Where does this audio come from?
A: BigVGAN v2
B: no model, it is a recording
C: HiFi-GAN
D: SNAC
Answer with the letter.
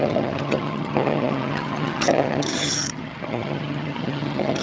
C